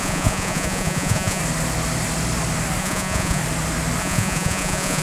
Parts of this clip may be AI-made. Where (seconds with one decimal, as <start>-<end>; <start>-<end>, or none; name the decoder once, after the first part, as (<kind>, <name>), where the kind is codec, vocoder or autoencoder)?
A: 0.0-1.4 (vocoder, Vocos); 2.8-3.4; 4.0-5.0